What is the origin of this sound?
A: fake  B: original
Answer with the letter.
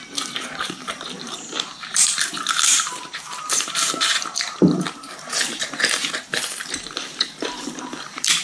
A